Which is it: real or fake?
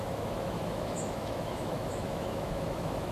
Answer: fake